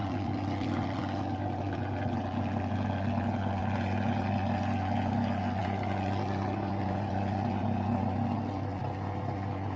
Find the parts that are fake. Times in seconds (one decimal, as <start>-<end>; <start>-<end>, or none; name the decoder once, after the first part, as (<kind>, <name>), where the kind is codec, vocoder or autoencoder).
0.0-1.0 (vocoder, BigVGAN v2)